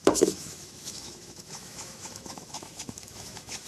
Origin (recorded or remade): remade